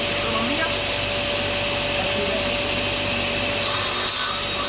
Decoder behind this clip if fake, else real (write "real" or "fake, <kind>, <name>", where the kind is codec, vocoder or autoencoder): real